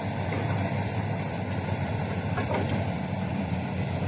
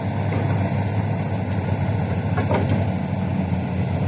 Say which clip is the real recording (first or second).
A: second